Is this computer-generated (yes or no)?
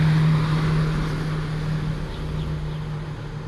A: no